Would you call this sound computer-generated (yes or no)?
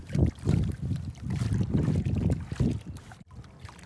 no